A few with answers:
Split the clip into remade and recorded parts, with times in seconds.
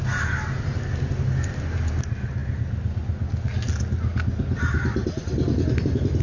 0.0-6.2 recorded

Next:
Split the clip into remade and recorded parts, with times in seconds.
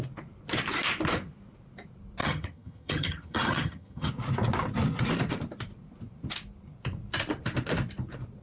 0.0-2.2 recorded; 2.2-4.1 remade; 4.1-8.4 recorded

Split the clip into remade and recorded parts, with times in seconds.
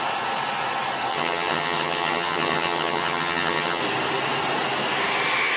0.0-1.1 recorded; 1.1-3.8 remade; 3.8-5.6 recorded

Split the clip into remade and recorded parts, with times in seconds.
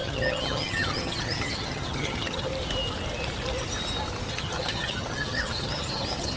0.0-2.5 remade; 2.5-4.3 recorded; 4.3-6.4 remade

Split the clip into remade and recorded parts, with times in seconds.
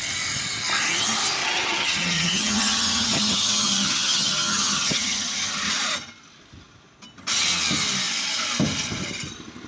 0.0-1.4 recorded; 1.4-5.7 remade; 5.7-9.7 recorded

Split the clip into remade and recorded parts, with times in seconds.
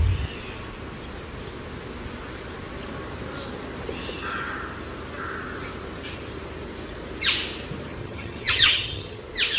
0.0-8.0 recorded; 8.0-9.2 remade; 9.2-9.6 recorded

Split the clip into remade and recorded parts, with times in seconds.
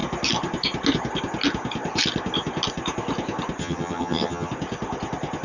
0.0-3.6 recorded; 3.6-4.5 remade; 4.5-5.4 recorded